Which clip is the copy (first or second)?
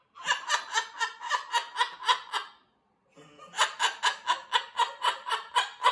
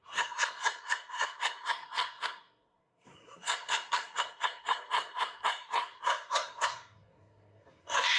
second